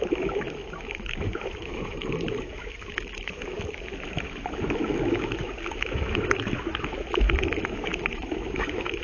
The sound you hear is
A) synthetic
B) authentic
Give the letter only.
A